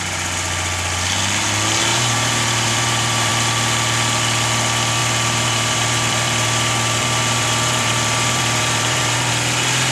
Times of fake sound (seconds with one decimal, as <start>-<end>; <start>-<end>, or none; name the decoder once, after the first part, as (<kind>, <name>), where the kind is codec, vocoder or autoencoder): 1.9-3.3 (vocoder, BigVGAN v2); 5.0-9.3